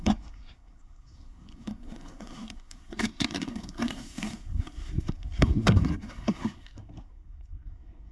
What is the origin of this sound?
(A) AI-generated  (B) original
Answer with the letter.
A